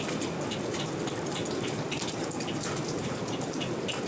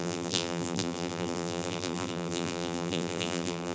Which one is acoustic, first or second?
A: first